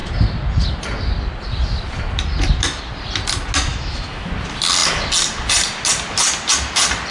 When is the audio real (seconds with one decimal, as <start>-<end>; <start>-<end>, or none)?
0.0-3.7; 4.3-7.1